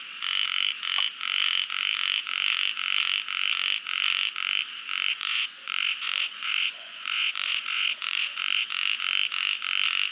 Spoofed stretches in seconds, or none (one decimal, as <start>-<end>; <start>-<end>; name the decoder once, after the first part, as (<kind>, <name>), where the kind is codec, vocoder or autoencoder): 5.1-8.7 (vocoder, Vocos)